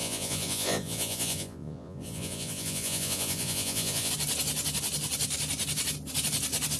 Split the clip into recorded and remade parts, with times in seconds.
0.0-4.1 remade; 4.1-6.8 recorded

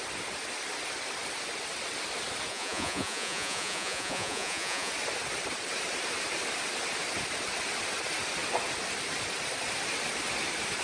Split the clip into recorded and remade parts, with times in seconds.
0.0-2.5 recorded; 2.5-4.9 remade; 4.9-10.8 recorded